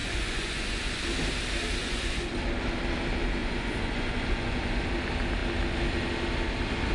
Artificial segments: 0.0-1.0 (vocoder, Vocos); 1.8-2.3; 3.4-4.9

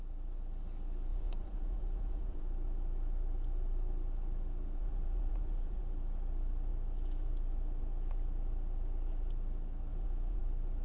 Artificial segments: 1.1-2.4 (vocoder, Vocos); 4.8-5.8; 9.9-10.4

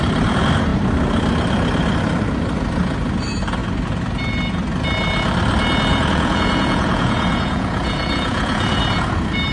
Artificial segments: 5.9-8.8 (vocoder, Vocos)

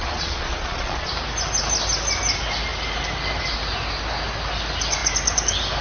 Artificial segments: 0.0-1.1 (vocoder, Vocos)

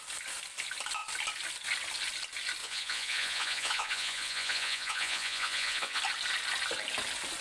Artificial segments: 2.6-6.0 (vocoder, Vocos)

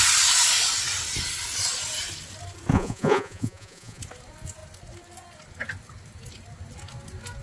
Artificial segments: 2.7-4.0 (vocoder, Vocos)

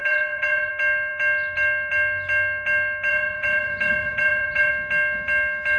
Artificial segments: 0.0-0.7 (vocoder, Vocos); 3.1-4.7